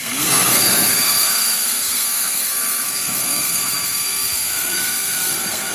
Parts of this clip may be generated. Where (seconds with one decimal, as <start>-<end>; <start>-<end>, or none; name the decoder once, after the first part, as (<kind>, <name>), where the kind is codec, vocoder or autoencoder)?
0.0-5.7 (codec, SNAC)